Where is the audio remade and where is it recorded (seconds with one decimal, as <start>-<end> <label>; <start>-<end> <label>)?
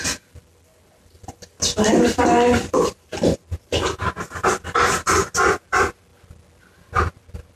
0.0-6.1 remade; 6.1-7.0 recorded; 7.0-7.5 remade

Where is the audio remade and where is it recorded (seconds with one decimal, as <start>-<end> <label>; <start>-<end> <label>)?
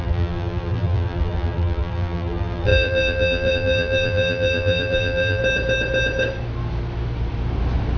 0.0-5.4 remade; 5.4-8.0 recorded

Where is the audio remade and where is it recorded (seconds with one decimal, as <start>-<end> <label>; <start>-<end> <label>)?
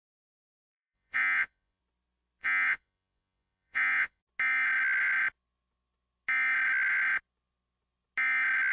0.0-0.4 recorded; 0.4-1.8 remade; 1.8-2.4 recorded; 2.4-4.2 remade; 4.2-8.7 recorded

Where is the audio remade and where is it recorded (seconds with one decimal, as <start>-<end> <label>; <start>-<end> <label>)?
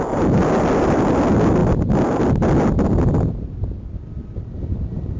0.0-5.2 recorded